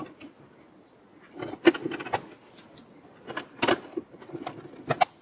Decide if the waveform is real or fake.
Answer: real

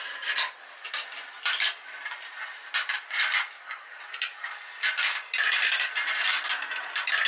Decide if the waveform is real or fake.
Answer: real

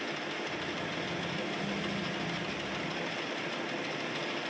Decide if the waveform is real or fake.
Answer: real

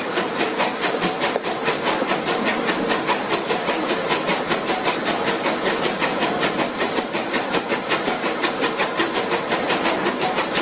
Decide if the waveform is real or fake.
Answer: fake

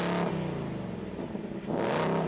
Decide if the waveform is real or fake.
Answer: real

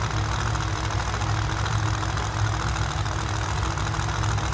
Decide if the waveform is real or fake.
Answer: real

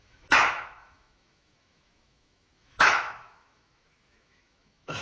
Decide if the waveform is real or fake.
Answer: fake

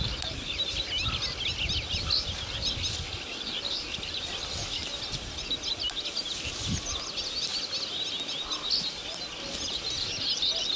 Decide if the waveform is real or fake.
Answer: real